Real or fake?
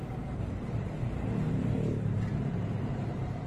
fake